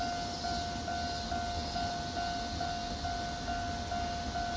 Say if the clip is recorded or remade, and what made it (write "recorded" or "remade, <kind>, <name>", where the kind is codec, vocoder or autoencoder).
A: recorded